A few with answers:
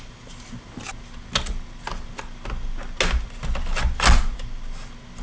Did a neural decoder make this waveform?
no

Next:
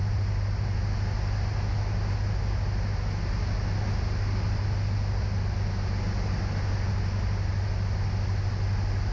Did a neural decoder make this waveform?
no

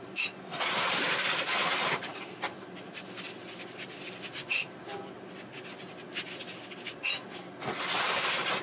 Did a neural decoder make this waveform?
no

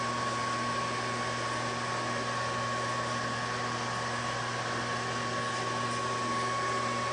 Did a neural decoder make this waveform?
no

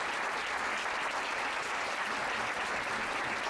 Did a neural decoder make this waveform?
no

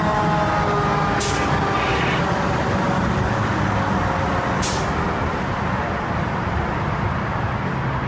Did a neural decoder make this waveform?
no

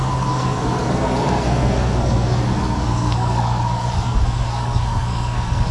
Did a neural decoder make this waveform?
yes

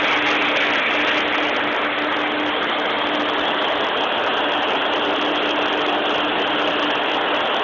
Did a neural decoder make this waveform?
no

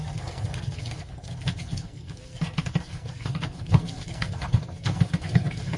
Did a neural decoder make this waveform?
yes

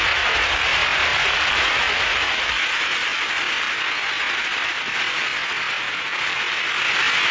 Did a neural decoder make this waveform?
no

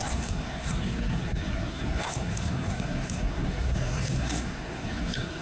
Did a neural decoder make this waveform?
yes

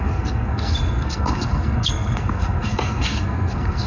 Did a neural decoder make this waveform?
yes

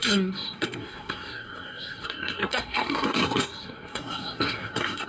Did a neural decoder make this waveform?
yes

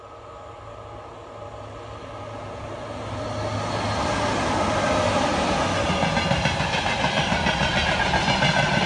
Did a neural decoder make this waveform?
no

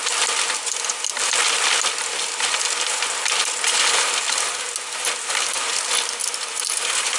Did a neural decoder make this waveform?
no